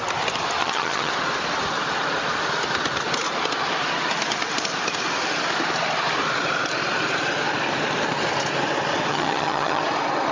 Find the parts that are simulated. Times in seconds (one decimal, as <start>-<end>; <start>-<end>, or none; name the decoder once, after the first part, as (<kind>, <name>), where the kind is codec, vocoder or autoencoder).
0.6-1.1 (vocoder, HiFi-GAN); 9.1-9.8